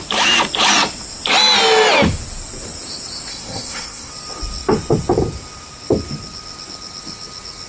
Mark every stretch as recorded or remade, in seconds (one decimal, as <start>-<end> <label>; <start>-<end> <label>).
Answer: 0.0-3.3 recorded; 3.3-4.1 remade; 4.1-7.7 recorded